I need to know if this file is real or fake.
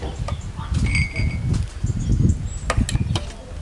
real